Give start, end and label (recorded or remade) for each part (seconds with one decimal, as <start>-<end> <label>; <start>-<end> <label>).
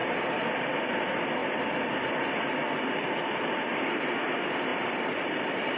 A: 0.0-5.8 recorded